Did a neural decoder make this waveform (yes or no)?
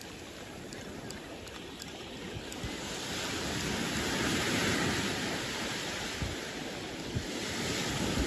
no